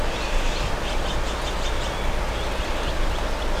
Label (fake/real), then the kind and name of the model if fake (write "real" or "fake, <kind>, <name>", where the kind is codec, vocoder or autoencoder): real